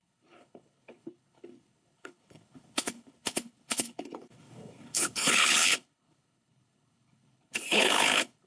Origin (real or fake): fake